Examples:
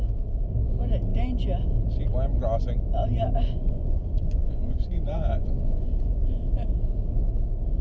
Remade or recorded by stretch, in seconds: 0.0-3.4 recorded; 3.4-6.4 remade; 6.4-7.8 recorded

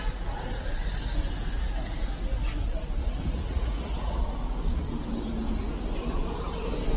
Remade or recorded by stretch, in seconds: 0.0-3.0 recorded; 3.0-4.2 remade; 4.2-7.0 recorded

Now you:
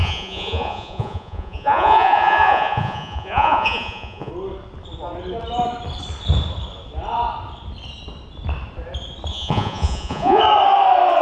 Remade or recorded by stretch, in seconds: 0.0-4.3 remade; 4.3-9.3 recorded; 9.3-10.4 remade; 10.4-11.2 recorded

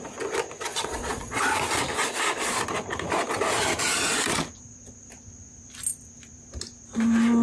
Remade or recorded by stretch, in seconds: 0.0-0.7 recorded; 0.7-1.4 remade; 1.4-7.4 recorded

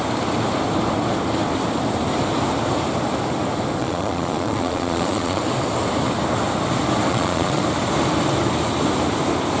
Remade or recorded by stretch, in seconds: 0.0-3.8 recorded; 3.8-5.4 remade; 5.4-7.1 recorded; 7.1-7.6 remade; 7.6-9.6 recorded